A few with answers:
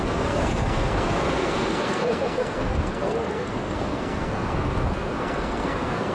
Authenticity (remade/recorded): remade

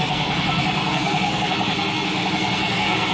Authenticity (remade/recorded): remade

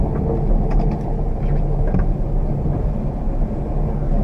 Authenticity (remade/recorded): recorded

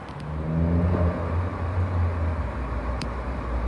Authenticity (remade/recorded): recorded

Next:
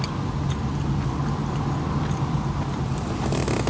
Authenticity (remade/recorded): recorded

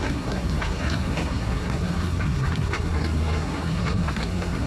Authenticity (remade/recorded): remade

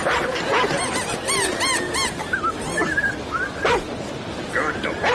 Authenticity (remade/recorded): recorded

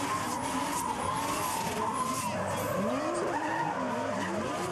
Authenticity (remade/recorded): recorded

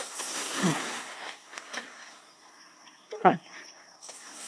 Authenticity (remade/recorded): remade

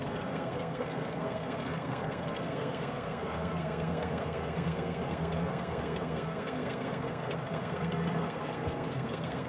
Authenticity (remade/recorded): remade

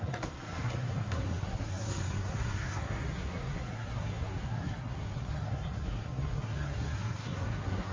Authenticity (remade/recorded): remade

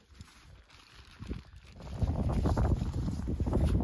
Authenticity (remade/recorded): recorded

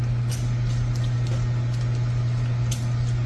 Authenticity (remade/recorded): recorded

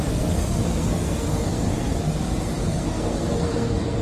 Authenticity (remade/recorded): remade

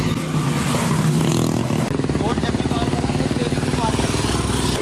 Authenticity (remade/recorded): recorded